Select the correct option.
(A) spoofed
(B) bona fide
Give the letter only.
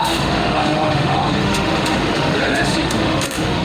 A